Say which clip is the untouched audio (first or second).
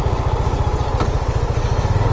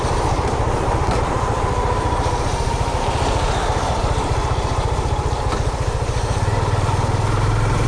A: first